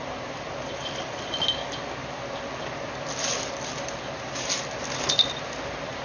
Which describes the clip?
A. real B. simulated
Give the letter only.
A